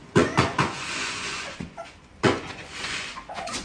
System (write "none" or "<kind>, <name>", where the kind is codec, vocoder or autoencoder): vocoder, Vocos